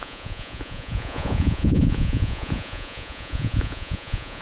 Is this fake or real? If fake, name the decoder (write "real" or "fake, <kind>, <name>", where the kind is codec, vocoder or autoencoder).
fake, vocoder, Vocos